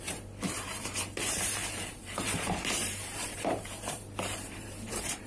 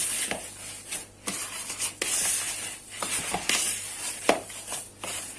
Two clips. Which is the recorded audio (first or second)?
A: second